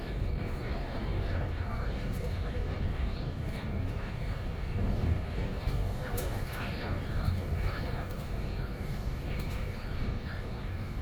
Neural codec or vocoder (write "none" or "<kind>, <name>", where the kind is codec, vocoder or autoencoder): codec, DAC